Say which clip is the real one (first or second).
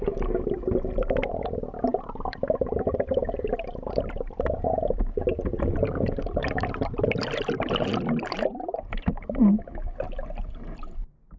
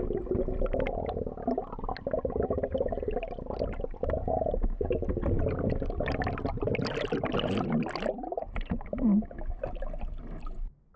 second